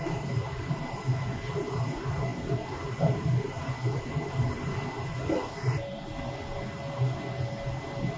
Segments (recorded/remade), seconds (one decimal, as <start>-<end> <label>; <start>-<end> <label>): 0.0-2.3 recorded; 2.3-4.0 remade; 4.0-8.2 recorded